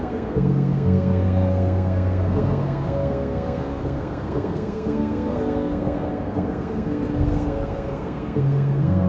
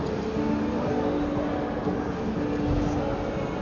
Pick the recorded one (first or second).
second